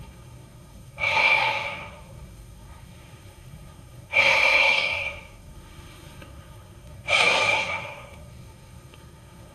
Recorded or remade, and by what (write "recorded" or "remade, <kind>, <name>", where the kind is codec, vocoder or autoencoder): remade, codec, SNAC